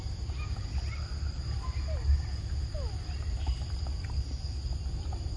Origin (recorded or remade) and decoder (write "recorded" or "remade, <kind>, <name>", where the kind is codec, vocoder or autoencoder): recorded